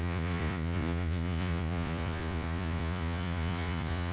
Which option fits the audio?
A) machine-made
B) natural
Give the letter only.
A